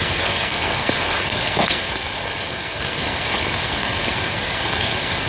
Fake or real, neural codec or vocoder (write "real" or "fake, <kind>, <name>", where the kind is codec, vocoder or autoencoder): fake, codec, SNAC